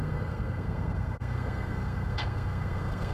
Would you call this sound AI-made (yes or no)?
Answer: yes